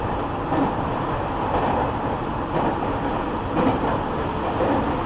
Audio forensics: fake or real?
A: fake